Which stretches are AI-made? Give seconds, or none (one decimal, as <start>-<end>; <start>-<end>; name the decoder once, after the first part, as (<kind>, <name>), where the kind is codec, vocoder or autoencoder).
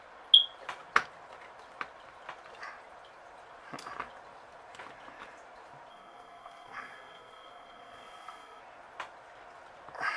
5.9-8.6 (codec, SNAC)